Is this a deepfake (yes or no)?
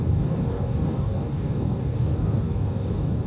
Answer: yes